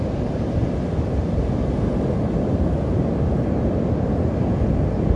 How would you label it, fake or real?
real